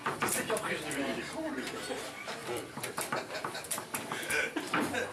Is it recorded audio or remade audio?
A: remade